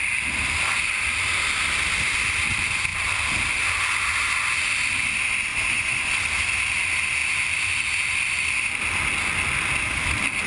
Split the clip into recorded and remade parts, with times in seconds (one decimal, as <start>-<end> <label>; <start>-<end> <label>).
0.0-5.5 recorded; 5.5-6.1 remade; 6.1-10.5 recorded